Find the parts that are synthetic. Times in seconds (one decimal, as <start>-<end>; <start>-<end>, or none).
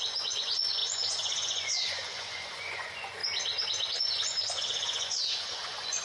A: 0.0-3.2; 3.9-6.0